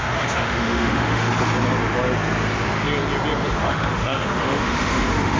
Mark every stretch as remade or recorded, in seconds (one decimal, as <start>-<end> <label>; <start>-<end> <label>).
0.0-1.3 remade; 1.3-3.5 recorded; 3.5-5.4 remade

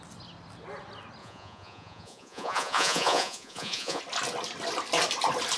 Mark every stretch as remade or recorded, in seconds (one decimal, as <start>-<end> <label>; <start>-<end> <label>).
0.0-1.2 recorded; 1.2-4.0 remade; 4.0-5.6 recorded

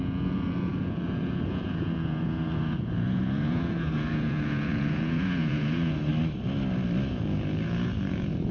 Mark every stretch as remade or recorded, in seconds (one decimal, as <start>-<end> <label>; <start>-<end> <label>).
0.0-6.1 remade; 6.1-7.1 recorded; 7.1-8.5 remade

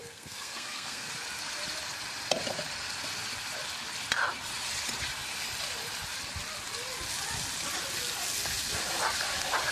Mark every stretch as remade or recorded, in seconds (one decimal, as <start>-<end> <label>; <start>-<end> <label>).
0.0-1.1 remade; 1.1-9.7 recorded